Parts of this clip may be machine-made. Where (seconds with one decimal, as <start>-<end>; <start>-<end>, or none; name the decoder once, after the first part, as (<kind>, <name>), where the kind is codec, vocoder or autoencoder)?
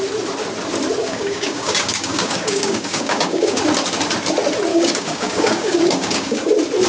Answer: 1.0-3.6 (codec, DAC); 4.7-6.5